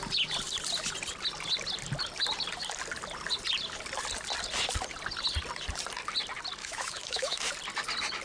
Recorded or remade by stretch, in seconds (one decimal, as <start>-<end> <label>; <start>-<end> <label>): 0.0-6.6 recorded; 6.6-7.5 remade; 7.5-8.2 recorded

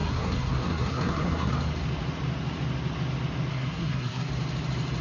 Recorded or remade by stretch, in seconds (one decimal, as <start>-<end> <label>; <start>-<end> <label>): 0.0-1.5 remade; 1.5-3.5 recorded; 3.5-4.3 remade; 4.3-5.0 recorded